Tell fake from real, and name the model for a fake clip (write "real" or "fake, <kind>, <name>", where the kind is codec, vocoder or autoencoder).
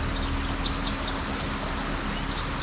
real